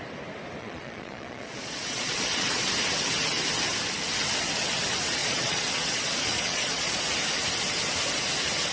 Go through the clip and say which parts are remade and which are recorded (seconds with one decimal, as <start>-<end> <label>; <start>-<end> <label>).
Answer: 0.0-0.6 recorded; 0.6-2.7 remade; 2.7-5.2 recorded; 5.2-7.0 remade; 7.0-8.7 recorded

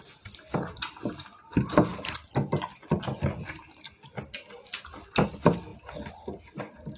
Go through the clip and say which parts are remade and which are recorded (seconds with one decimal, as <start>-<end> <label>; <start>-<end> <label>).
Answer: 0.0-7.0 recorded

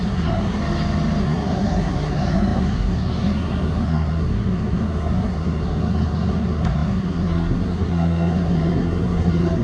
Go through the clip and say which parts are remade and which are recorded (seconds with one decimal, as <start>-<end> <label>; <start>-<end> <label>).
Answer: 0.0-0.6 remade; 0.6-1.2 recorded; 1.2-9.6 remade